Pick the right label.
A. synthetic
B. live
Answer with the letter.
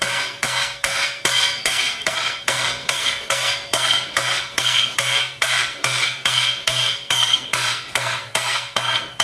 A